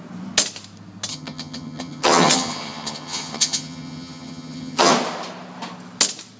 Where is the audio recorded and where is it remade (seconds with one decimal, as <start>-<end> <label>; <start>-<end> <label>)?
0.0-1.1 recorded; 1.1-4.9 remade; 4.9-6.4 recorded